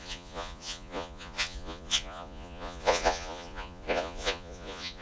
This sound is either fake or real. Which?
fake